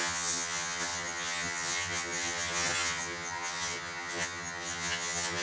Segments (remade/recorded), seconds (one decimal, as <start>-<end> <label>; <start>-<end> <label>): 0.0-5.4 remade